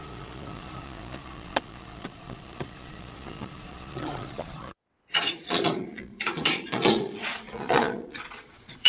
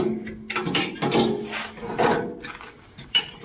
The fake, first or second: first